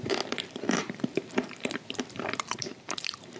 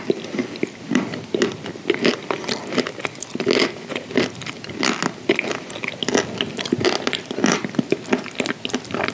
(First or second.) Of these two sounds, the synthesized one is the first